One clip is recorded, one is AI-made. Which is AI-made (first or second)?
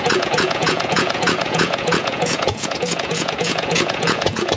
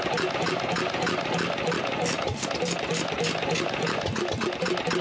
first